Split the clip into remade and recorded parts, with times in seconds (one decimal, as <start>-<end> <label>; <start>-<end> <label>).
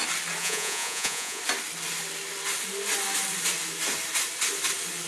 0.0-0.4 recorded; 0.4-1.4 remade; 1.4-5.1 recorded